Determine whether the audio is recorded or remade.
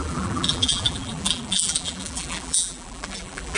remade